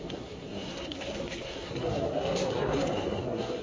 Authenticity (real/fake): fake